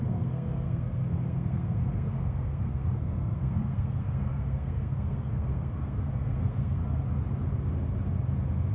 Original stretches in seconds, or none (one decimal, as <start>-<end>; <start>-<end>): 6.8-8.7